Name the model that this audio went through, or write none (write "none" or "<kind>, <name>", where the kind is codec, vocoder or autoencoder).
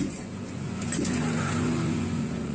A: vocoder, Vocos